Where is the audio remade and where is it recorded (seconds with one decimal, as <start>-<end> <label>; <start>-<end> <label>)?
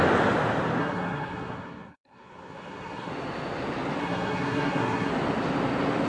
0.0-0.8 recorded; 0.8-3.1 remade; 3.1-4.0 recorded; 4.0-5.1 remade; 5.1-6.1 recorded